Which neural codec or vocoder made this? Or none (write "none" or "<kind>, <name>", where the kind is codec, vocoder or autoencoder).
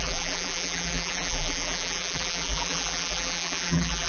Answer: vocoder, BigVGAN v2